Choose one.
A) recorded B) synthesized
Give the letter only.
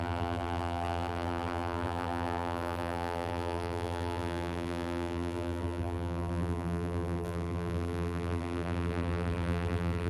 B